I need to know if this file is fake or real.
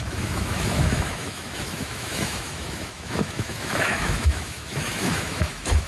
fake